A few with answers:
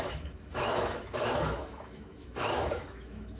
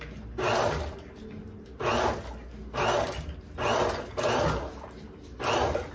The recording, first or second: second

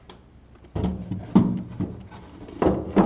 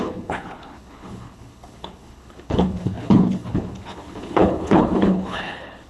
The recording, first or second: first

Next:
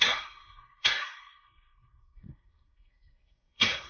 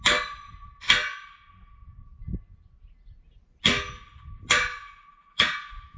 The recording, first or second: second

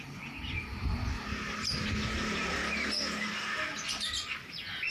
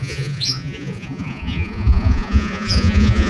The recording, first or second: first